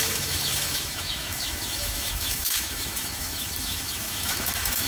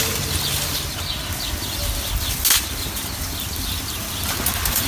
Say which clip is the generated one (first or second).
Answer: first